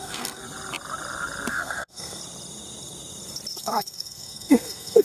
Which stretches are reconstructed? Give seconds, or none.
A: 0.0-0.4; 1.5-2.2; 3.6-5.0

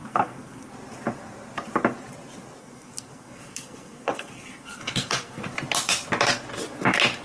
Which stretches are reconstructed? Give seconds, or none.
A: 0.0-0.7; 2.6-5.4

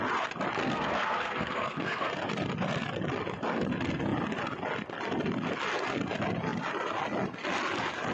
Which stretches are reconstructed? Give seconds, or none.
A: 0.6-2.1